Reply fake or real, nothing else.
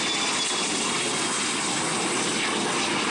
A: real